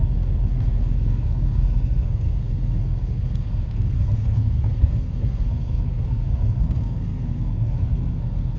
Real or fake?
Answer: fake